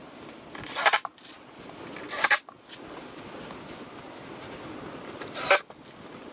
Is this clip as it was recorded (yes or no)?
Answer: yes